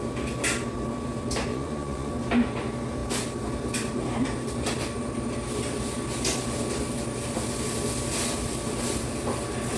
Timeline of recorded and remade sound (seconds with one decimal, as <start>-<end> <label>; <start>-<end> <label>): 0.0-1.5 recorded; 1.5-2.1 remade; 2.1-9.8 recorded